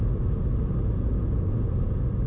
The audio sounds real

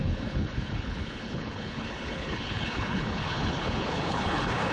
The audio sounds fake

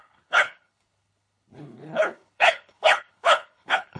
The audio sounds fake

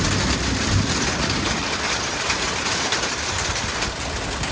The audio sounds real